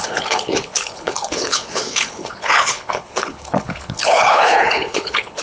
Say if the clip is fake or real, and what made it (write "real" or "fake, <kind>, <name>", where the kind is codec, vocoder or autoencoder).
fake, codec, HILCodec